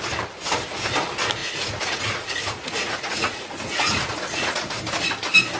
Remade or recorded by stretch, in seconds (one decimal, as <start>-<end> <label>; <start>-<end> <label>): 0.0-1.4 recorded; 1.4-4.8 remade; 4.8-5.6 recorded